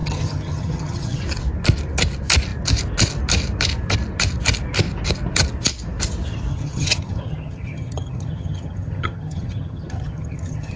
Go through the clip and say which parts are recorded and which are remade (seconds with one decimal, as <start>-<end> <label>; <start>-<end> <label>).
0.0-1.2 remade; 1.2-6.5 recorded; 6.5-10.8 remade